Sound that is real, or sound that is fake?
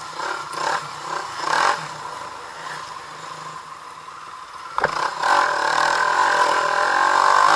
real